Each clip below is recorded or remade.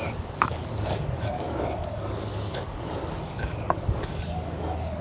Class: remade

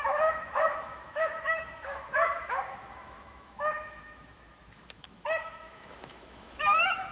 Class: remade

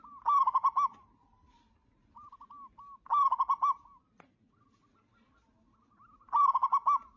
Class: recorded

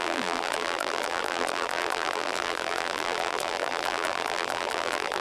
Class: remade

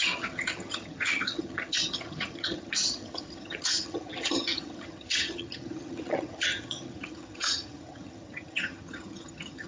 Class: remade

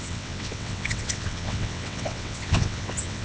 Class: remade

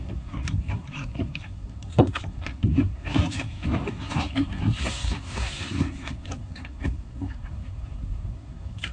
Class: remade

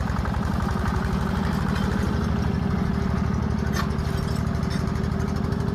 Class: recorded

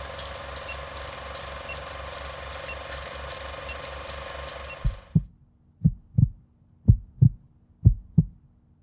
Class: recorded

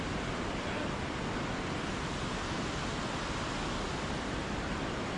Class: recorded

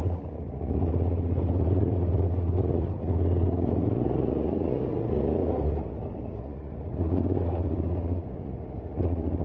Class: remade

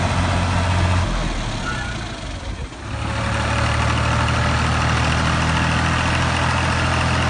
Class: recorded